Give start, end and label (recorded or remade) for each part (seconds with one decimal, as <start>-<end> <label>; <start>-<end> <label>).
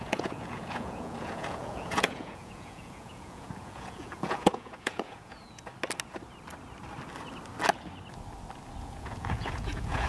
0.0-5.7 remade; 5.7-8.8 recorded; 8.8-10.1 remade